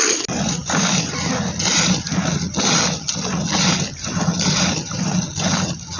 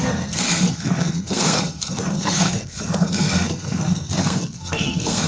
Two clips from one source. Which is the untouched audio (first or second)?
first